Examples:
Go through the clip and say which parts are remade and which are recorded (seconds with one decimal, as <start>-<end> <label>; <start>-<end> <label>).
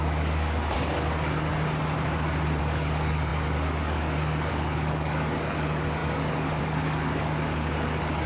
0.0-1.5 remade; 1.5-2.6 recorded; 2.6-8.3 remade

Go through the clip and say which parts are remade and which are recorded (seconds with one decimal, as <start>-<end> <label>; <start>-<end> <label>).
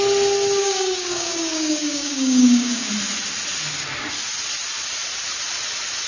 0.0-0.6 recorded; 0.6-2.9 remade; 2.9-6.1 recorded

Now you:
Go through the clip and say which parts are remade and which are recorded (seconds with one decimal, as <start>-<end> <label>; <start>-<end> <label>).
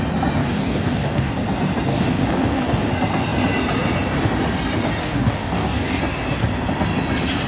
0.0-0.4 recorded; 0.4-1.3 remade; 1.3-1.9 recorded; 1.9-2.9 remade; 2.9-5.0 recorded; 5.0-6.0 remade; 6.0-7.5 recorded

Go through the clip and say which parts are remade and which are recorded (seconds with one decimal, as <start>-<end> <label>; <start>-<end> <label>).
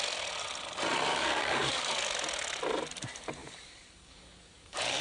0.0-1.1 recorded; 1.1-1.9 remade; 1.9-3.4 recorded; 3.4-5.0 remade